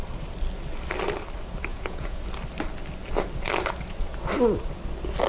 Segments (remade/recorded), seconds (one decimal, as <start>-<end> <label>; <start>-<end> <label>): 0.0-1.7 recorded; 1.7-2.2 remade; 2.2-5.3 recorded